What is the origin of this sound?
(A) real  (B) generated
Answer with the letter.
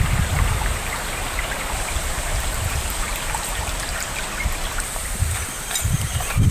B